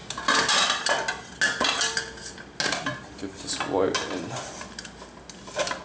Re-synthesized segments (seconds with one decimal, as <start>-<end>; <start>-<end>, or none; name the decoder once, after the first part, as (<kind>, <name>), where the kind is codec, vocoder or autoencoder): none